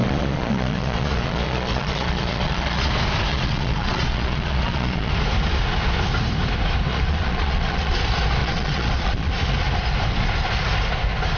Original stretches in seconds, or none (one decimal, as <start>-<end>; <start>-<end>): 2.9-3.3; 5.1-6.9; 8.0-8.4; 9.3-11.4